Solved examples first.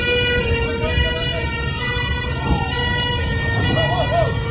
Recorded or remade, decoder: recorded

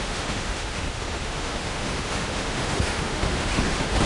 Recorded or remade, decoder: remade, autoencoder, DAC-VAE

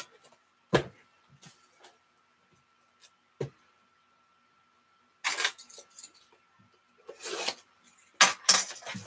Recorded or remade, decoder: recorded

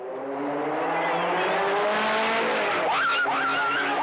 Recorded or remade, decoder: recorded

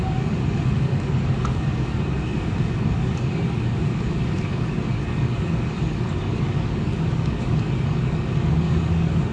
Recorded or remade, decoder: remade, codec, DAC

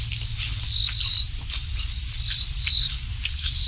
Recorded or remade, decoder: recorded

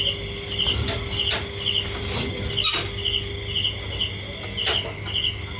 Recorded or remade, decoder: recorded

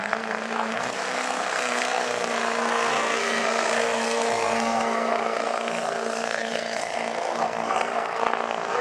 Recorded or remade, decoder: remade, codec, SNAC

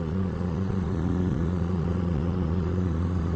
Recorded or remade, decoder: remade, vocoder, Vocos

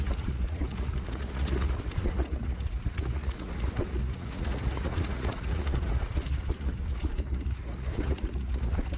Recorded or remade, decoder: remade, vocoder, Vocos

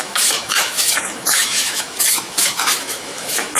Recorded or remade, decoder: remade, autoencoder, DAC-VAE